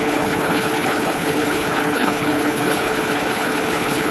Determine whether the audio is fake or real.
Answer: fake